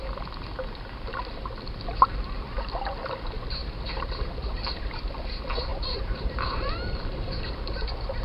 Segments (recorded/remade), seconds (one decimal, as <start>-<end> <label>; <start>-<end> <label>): 0.0-3.6 recorded; 3.6-4.1 remade; 4.1-5.7 recorded; 5.7-6.7 remade; 6.7-8.2 recorded